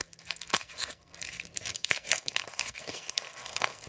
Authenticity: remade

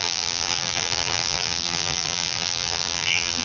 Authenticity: remade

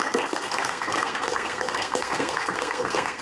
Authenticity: remade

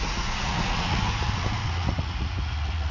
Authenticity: remade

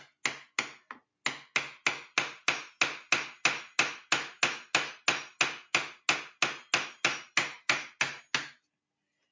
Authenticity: recorded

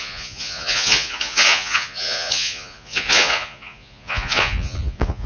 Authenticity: remade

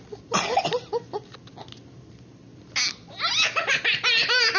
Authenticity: recorded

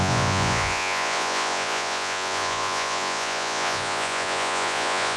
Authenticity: remade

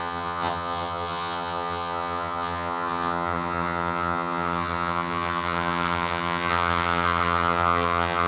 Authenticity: remade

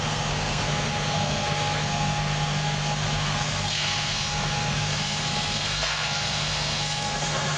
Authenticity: remade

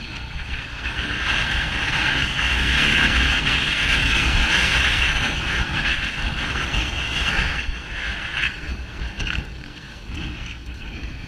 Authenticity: remade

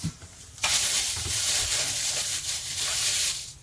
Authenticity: remade